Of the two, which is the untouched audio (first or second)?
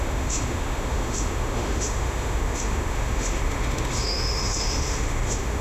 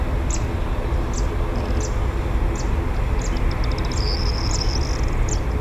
second